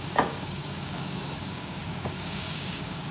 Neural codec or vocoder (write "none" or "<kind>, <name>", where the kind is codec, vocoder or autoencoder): codec, DAC